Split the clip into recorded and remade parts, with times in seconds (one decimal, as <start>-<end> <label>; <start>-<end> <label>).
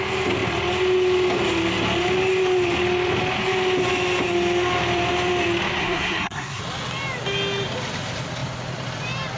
0.0-5.8 recorded; 5.8-6.6 remade; 6.6-9.4 recorded